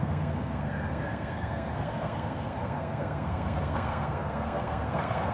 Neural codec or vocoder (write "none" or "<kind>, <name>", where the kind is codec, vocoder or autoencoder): codec, SNAC